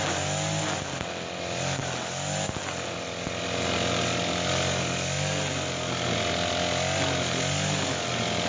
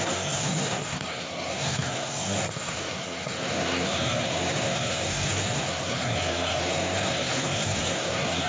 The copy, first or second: second